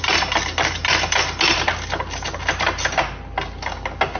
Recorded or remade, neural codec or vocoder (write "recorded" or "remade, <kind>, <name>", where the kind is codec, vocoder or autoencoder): recorded